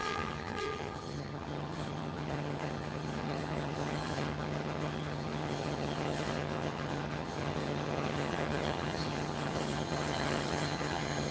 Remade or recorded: remade